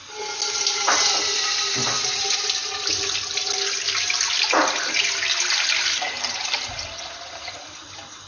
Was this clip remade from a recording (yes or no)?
no